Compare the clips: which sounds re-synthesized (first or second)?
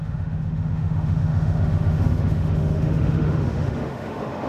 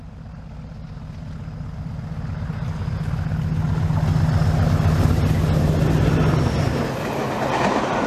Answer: first